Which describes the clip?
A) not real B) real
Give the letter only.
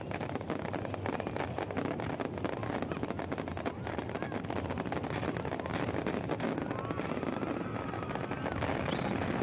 B